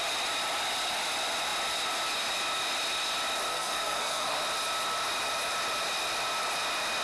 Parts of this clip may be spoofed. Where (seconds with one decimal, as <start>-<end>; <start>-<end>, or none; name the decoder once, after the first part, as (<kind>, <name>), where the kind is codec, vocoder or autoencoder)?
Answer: 3.5-4.4 (codec, SNAC)